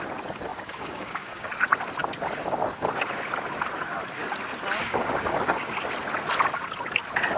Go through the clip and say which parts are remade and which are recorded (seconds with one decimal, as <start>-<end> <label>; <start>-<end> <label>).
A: 0.0-0.5 recorded; 0.5-1.5 remade; 1.5-4.8 recorded; 4.8-5.7 remade; 5.7-7.4 recorded